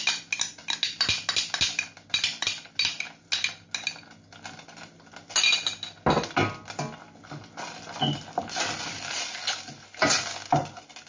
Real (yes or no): yes